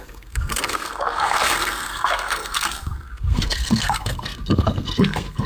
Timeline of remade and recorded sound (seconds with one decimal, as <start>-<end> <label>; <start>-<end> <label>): 0.0-5.5 remade